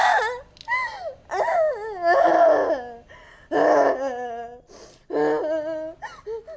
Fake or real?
real